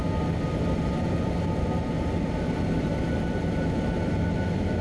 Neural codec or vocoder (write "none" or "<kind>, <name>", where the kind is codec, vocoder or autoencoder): none